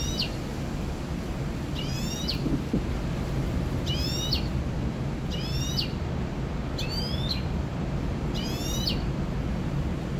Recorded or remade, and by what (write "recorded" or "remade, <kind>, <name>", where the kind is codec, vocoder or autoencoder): recorded